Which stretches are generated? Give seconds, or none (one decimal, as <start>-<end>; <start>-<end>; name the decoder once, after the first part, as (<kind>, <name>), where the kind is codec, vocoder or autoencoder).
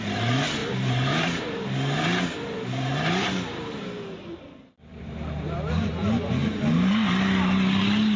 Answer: 0.6-3.9 (vocoder, BigVGAN v2); 4.9-5.9